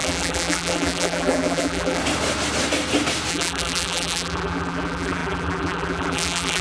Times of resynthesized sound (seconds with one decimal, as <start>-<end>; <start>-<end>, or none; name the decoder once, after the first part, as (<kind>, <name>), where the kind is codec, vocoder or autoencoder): 0.0-2.0 (vocoder, BigVGAN v2); 3.3-6.6